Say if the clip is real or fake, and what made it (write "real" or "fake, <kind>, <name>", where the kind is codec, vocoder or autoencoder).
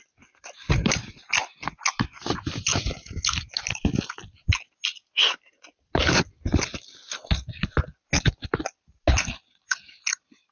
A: real